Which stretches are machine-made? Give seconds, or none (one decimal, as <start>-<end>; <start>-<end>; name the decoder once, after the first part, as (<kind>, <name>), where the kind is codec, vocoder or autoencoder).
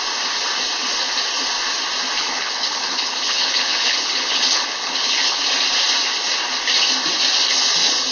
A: 2.2-5.4 (codec, HILCodec)